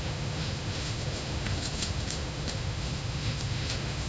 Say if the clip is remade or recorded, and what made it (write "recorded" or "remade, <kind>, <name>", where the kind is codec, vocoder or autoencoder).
remade, autoencoder, DAC-VAE